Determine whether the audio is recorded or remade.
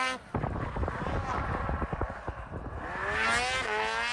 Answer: recorded